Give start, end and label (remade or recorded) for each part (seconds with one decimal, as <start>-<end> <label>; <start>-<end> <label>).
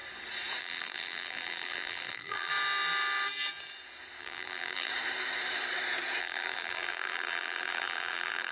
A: 0.0-0.6 recorded; 0.6-2.5 remade; 2.5-4.2 recorded; 4.2-4.9 remade; 4.9-6.2 recorded; 6.2-8.5 remade